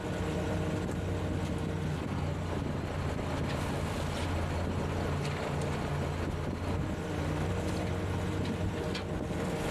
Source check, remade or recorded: recorded